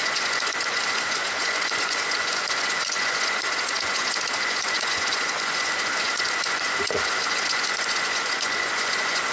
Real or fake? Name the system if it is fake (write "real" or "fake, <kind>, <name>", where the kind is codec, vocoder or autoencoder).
fake, vocoder, Vocos